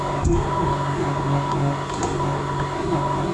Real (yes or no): no